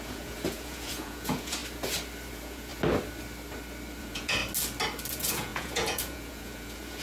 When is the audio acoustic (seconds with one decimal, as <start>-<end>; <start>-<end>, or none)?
1.6-2.3; 2.7-4.0; 4.4-5.1